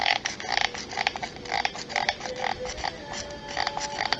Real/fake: real